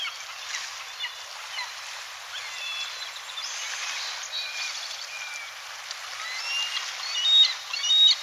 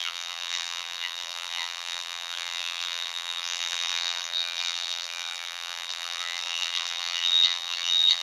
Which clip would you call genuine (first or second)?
first